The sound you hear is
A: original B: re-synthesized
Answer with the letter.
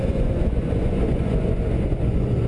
B